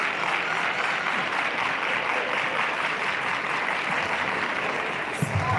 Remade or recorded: recorded